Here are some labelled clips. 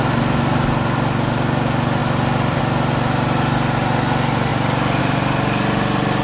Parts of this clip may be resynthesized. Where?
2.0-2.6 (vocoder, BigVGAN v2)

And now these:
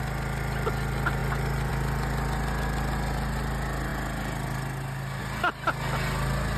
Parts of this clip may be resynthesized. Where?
none

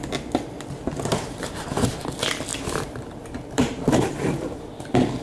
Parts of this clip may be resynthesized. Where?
1.1-1.9 (vocoder, BigVGAN v2); 2.5-4.7

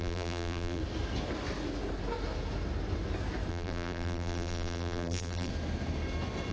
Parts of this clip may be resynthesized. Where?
0.0-0.8 (vocoder, BigVGAN v2); 3.5-5.5

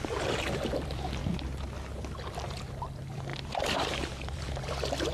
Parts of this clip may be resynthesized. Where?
0.0-1.2 (vocoder, BigVGAN v2); 2.4-5.1